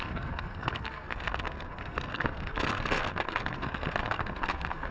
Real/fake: fake